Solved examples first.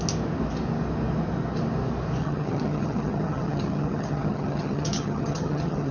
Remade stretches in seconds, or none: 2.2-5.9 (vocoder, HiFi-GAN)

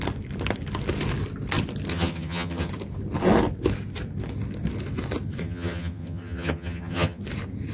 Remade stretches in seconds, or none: 1.9-2.7 (vocoder, HiFi-GAN); 5.4-7.2

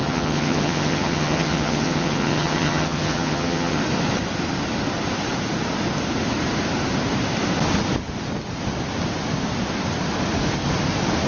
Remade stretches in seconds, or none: 0.0-3.8 (vocoder, HiFi-GAN)

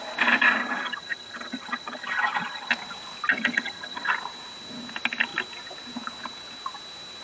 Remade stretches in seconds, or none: 0.6-2.7 (vocoder, HiFi-GAN); 3.3-4.1

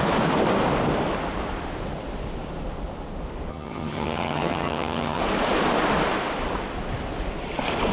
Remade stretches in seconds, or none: 3.5-5.2 (vocoder, HiFi-GAN)

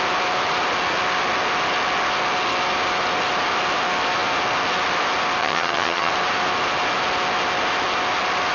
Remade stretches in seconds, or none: 5.4-6.1 (vocoder, HiFi-GAN)

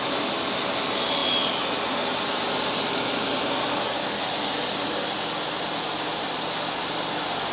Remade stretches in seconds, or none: none

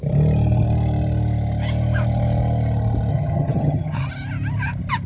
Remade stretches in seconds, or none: 3.1-4.1 (vocoder, HiFi-GAN)